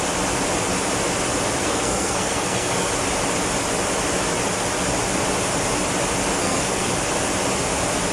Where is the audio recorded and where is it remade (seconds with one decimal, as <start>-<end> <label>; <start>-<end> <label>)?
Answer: 0.0-1.6 recorded; 1.6-2.9 remade; 2.9-6.4 recorded; 6.4-6.9 remade; 6.9-8.1 recorded